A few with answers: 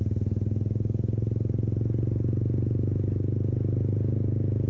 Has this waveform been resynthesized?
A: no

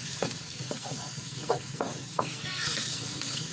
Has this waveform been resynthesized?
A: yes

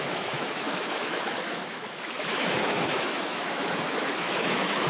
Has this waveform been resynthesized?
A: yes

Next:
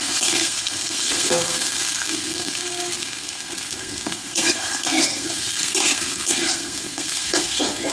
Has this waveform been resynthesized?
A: yes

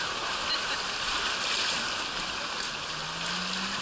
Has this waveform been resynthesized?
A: no